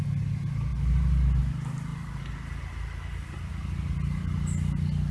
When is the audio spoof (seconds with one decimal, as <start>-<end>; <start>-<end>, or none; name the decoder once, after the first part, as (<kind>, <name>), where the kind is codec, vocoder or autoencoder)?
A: none